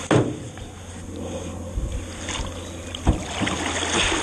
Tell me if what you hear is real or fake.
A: real